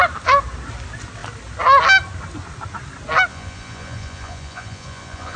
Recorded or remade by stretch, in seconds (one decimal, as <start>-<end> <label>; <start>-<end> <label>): 0.0-3.3 recorded; 3.3-5.4 remade